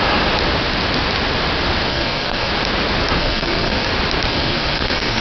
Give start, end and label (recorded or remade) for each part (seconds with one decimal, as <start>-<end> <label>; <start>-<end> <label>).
0.0-1.9 recorded; 1.9-2.5 remade; 2.5-3.2 recorded; 3.2-3.9 remade; 3.9-4.3 recorded; 4.3-5.2 remade